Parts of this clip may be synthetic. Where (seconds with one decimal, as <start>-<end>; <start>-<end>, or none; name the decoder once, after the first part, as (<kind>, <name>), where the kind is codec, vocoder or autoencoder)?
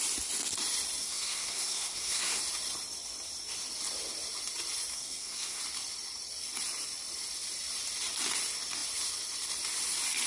1.0-2.4 (codec, SNAC); 4.9-5.6